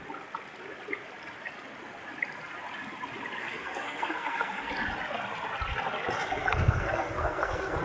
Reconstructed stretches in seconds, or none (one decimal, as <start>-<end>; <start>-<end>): 3.4-4.7; 6.4-7.8